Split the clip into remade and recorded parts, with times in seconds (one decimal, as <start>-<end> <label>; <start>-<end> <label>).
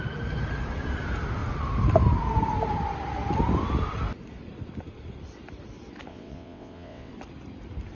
0.0-6.1 recorded; 6.1-7.1 remade; 7.1-7.9 recorded